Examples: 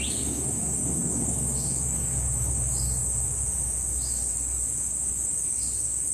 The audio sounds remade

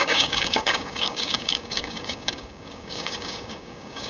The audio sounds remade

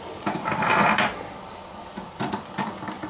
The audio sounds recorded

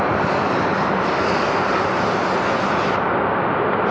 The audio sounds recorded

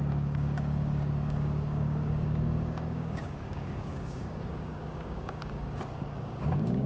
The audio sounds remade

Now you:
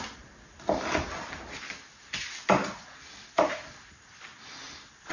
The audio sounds recorded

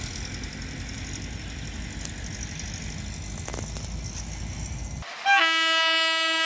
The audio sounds recorded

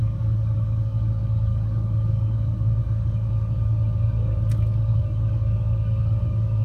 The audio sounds remade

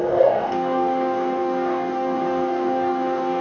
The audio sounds remade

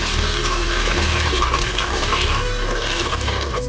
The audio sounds remade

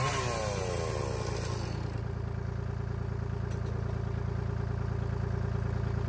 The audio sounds recorded